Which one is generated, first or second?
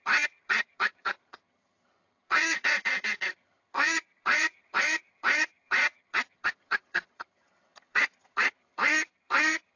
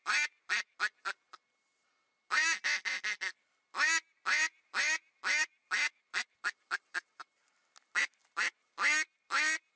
first